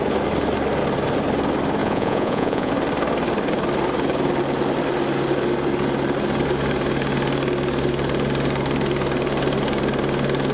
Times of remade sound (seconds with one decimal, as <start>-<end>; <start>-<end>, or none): 1.8-2.7